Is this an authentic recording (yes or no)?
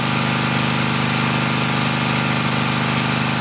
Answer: yes